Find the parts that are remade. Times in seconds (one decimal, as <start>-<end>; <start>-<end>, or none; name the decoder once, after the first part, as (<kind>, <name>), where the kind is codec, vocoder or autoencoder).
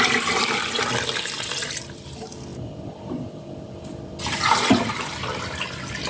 none